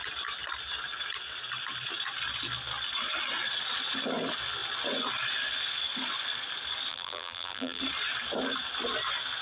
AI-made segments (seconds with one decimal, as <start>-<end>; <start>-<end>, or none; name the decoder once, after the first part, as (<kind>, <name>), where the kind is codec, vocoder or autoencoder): 6.9-7.8 (vocoder, BigVGAN v2)